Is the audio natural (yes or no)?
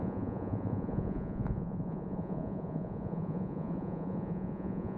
no